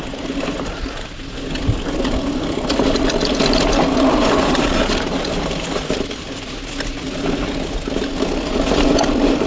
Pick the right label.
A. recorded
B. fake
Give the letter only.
A